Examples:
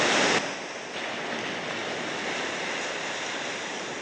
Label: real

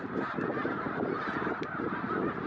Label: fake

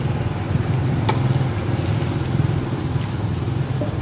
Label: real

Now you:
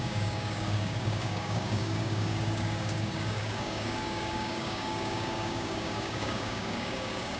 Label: fake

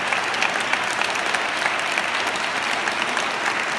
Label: real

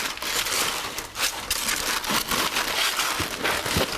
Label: real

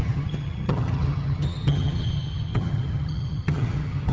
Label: fake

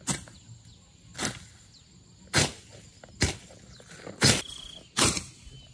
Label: real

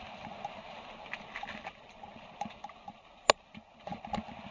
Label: real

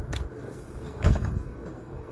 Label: fake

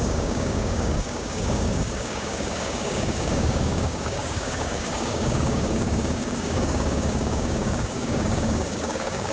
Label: fake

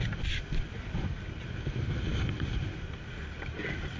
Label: real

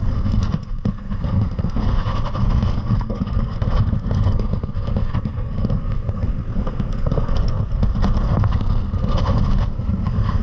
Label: fake